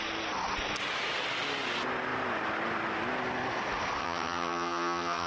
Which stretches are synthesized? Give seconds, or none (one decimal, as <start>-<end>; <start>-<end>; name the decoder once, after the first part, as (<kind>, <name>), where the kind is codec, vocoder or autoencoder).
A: 4.0-5.3 (vocoder, HiFi-GAN)